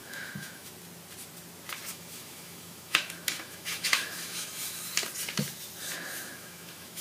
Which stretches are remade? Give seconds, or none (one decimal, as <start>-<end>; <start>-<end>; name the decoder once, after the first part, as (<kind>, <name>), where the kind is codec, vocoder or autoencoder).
0.0-0.7 (autoencoder, DAC-VAE); 1.9-4.8; 5.8-7.0